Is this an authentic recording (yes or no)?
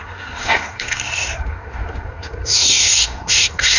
no